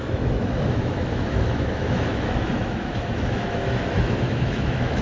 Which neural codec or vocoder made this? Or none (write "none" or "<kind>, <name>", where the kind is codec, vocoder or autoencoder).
autoencoder, DAC-VAE